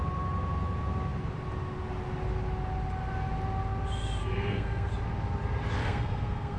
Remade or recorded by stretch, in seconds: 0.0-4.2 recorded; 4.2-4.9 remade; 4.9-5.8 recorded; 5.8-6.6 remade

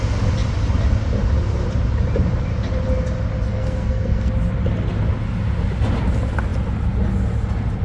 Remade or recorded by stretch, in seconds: 0.0-3.5 recorded; 3.5-4.3 remade; 4.3-7.8 recorded

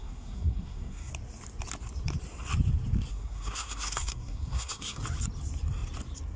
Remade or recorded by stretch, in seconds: 0.0-1.1 remade; 1.1-3.1 recorded; 3.1-5.0 remade; 5.0-6.4 recorded

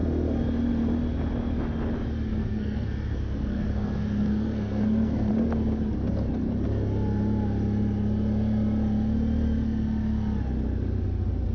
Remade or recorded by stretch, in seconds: 0.0-2.4 recorded; 2.4-5.3 remade; 5.3-11.5 recorded

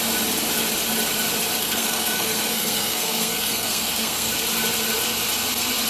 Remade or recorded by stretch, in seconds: 0.0-1.6 recorded; 1.6-4.3 remade; 4.3-5.9 recorded

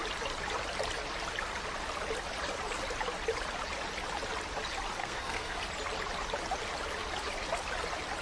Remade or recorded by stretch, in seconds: 0.0-5.0 recorded; 5.0-5.6 remade; 5.6-8.2 recorded

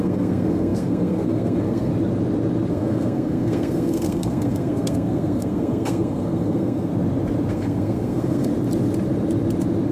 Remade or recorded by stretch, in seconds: 0.0-1.9 remade; 1.9-2.7 recorded; 2.7-6.9 remade; 6.9-7.5 recorded; 7.5-8.5 remade; 8.5-9.9 recorded